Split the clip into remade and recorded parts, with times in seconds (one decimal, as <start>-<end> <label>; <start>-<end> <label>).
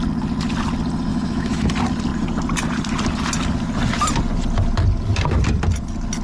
0.0-1.1 recorded; 1.1-1.7 remade; 1.7-6.2 recorded